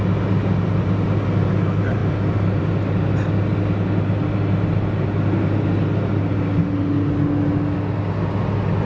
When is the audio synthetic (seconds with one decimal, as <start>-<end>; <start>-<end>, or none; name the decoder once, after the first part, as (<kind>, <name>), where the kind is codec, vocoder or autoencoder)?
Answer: none